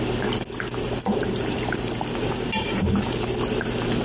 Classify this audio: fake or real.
real